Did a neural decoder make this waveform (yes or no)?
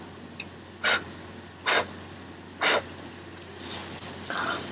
no